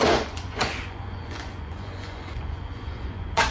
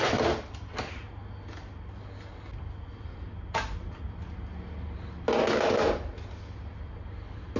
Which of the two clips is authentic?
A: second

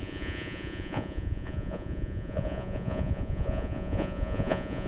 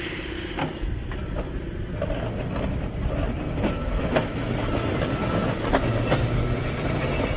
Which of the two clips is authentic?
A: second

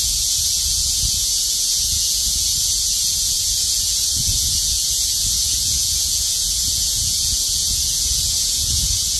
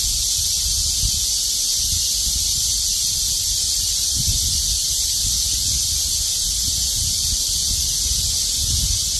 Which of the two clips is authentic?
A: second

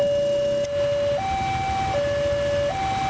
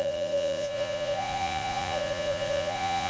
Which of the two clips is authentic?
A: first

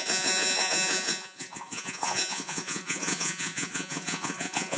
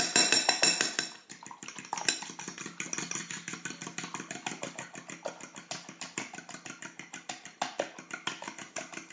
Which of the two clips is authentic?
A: second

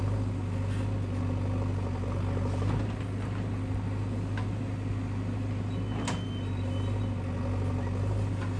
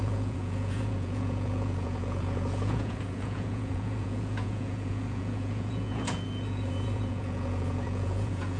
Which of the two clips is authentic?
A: first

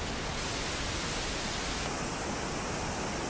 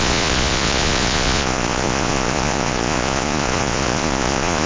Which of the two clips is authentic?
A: first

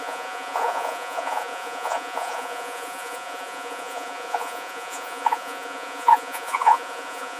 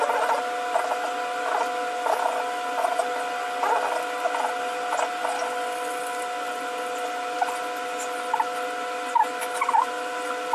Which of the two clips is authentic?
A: second